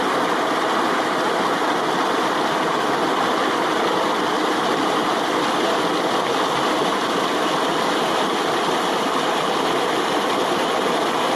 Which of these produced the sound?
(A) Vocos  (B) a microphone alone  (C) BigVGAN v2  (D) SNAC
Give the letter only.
B